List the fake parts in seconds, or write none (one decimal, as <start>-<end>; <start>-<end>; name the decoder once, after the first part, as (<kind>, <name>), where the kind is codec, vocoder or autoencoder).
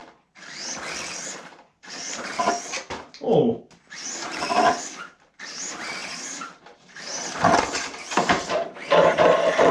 1.5-2.3 (vocoder, BigVGAN v2); 5.6-9.7